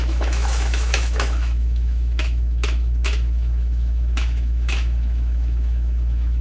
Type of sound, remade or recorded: remade